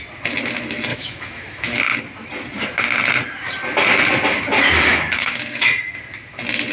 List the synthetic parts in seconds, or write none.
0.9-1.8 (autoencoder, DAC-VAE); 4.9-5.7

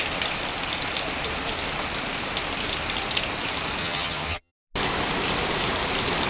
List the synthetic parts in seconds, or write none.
3.8-4.5 (vocoder, HiFi-GAN)

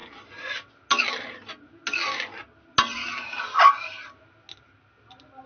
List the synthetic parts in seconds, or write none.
none

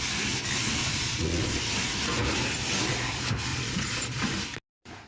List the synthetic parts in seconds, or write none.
0.8-1.6 (vocoder, Vocos); 3.5-4.3

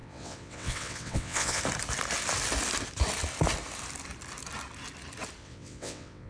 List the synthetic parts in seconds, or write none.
0.0-1.6 (vocoder, WaveNeXt); 5.4-6.3

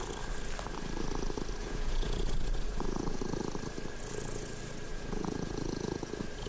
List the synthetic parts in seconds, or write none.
1.6-2.2 (vocoder, Vocos); 2.7-3.2; 4.9-6.1

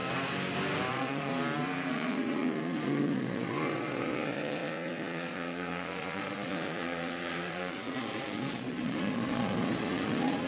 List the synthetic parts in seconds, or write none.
0.9-1.3 (vocoder, Vocos); 1.9-10.5